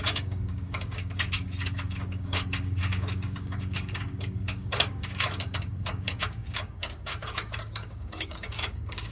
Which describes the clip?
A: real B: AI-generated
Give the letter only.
B